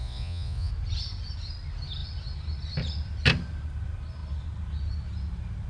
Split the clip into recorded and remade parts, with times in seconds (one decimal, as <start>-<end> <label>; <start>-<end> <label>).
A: 0.0-0.7 remade; 0.7-5.7 recorded